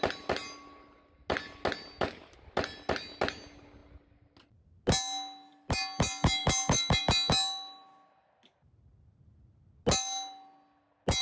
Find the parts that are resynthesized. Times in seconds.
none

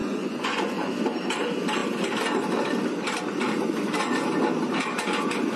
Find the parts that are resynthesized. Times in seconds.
0.0-0.9 (vocoder, Vocos)

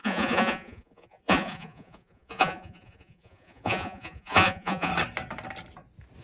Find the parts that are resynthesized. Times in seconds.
0.0-4.9 (vocoder, Vocos)

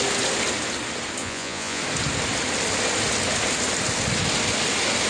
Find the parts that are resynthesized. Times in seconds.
1.2-1.8 (vocoder, Vocos)

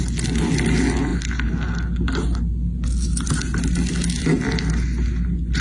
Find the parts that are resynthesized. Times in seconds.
none